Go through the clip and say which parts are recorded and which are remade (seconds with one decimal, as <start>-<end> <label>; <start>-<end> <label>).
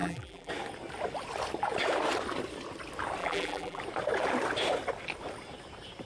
0.0-0.5 remade; 0.5-3.2 recorded; 3.2-3.8 remade; 3.8-6.1 recorded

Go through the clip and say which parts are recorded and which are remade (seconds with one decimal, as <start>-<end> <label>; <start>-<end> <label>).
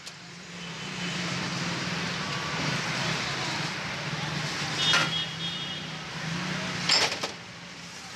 0.0-8.2 recorded